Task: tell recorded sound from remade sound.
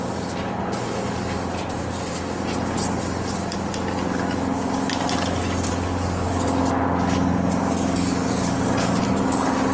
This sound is recorded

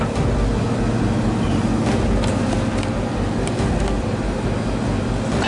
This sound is recorded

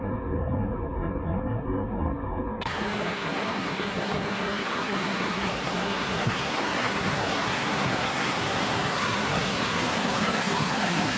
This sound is remade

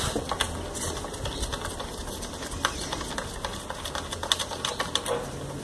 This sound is recorded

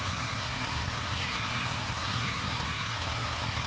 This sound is remade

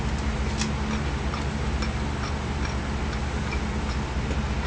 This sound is recorded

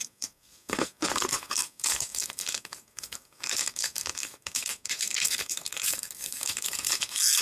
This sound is remade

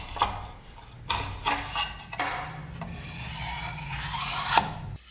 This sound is recorded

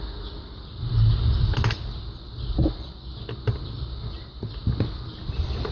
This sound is recorded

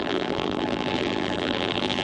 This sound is remade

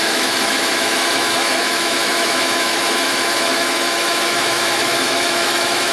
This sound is remade